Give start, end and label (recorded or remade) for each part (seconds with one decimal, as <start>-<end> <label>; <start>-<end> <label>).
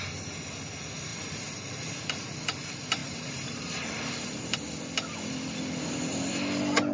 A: 0.0-1.1 recorded; 1.1-1.8 remade; 1.8-3.0 recorded; 3.0-4.4 remade; 4.4-6.9 recorded